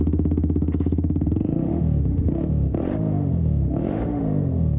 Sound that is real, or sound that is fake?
fake